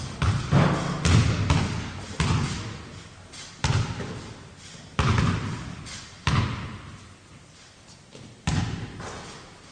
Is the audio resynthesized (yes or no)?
no